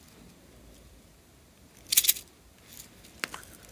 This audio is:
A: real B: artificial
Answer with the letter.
A